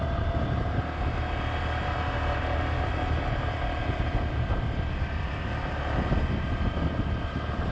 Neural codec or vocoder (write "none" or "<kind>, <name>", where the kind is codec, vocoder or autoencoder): none